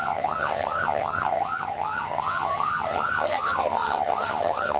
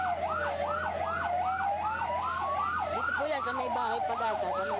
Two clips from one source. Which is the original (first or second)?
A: second